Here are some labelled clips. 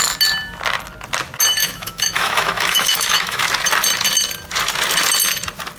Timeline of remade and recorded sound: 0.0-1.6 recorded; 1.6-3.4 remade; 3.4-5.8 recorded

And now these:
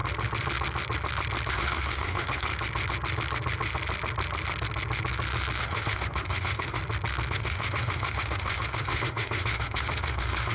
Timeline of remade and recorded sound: 0.0-1.5 recorded; 1.5-2.5 remade; 2.5-5.6 recorded; 5.6-6.8 remade; 6.8-7.3 recorded; 7.3-10.5 remade

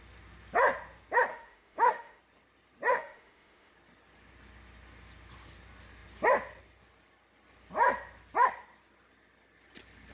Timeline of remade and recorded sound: 0.0-1.3 recorded; 1.3-2.2 remade; 2.2-2.9 recorded; 2.9-3.7 remade; 3.7-10.1 recorded